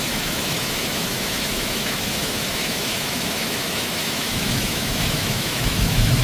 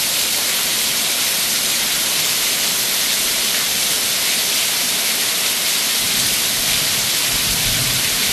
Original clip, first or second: second